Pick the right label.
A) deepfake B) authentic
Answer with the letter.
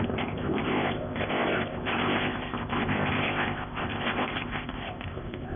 A